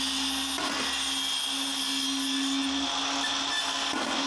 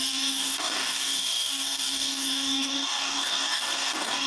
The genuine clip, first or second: first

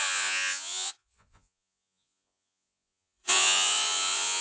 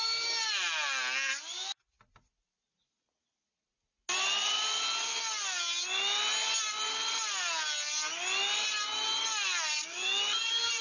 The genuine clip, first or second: second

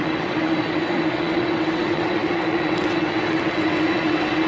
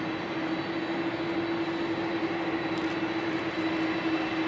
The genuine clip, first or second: second